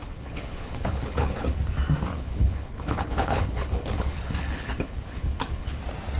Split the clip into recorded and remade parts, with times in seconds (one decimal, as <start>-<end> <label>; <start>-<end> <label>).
0.0-1.6 remade; 1.6-2.1 recorded; 2.1-5.8 remade; 5.8-6.2 recorded